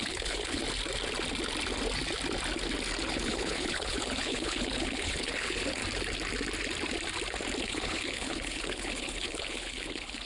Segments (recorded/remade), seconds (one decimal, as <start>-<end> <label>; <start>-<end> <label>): 0.0-0.6 remade; 0.6-3.1 recorded; 3.1-5.8 remade; 5.8-7.6 recorded; 7.6-10.3 remade